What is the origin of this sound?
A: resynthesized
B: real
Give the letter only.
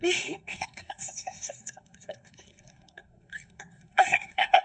A